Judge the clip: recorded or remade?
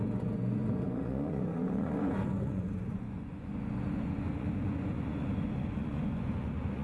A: remade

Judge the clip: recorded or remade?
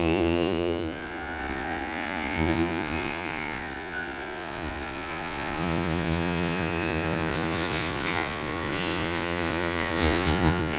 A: remade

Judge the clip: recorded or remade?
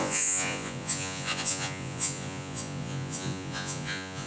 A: remade